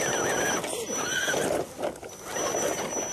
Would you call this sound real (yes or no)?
yes